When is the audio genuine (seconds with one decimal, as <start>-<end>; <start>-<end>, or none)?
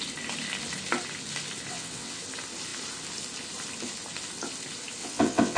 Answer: 0.0-1.7; 2.2-5.0